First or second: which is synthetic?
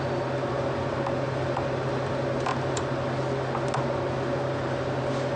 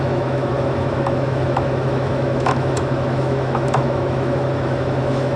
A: second